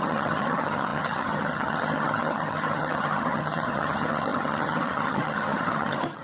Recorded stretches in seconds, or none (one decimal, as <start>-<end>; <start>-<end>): none